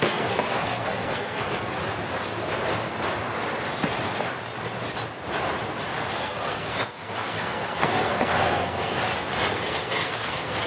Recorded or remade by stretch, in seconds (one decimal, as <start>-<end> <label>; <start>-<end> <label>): 0.0-1.8 remade; 1.8-6.1 recorded; 6.1-9.0 remade; 9.0-9.5 recorded; 9.5-10.7 remade